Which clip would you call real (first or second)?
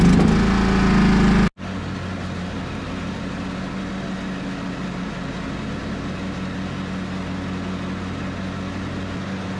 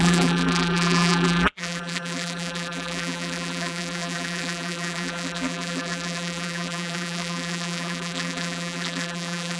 first